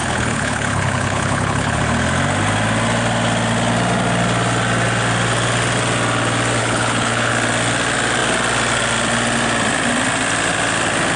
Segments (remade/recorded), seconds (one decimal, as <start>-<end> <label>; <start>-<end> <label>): 0.0-1.8 remade; 1.8-6.6 recorded; 6.6-7.3 remade; 7.3-11.2 recorded